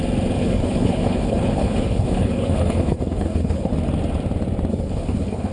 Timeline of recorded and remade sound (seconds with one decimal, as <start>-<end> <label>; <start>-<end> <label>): 0.0-0.4 recorded; 0.4-3.7 remade; 3.7-4.7 recorded; 4.7-5.5 remade

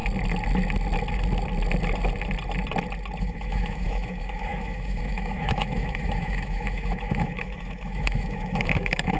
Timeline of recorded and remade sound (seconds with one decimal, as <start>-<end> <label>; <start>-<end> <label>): 0.0-3.2 recorded; 3.2-9.2 remade

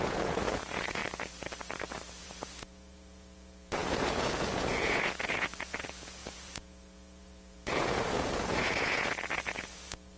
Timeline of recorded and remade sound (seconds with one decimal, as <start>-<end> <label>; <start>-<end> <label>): 0.0-1.0 remade; 1.0-2.2 recorded; 2.2-10.2 remade

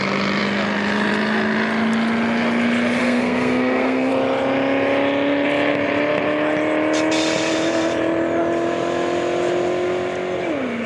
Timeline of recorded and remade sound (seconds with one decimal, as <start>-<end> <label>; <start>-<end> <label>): 0.0-3.0 recorded; 3.0-4.1 remade; 4.1-10.9 recorded

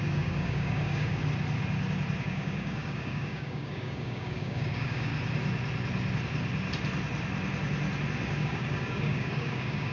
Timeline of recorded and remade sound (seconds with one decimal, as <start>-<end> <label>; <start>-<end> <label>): 0.0-1.2 remade; 1.2-2.2 recorded; 2.2-5.1 remade; 5.1-8.4 recorded; 8.4-9.9 remade